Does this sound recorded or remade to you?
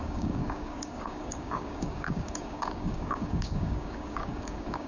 remade